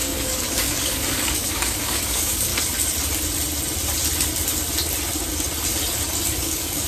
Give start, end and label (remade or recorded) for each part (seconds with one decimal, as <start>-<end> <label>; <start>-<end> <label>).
0.0-2.5 remade; 2.5-6.4 recorded; 6.4-6.9 remade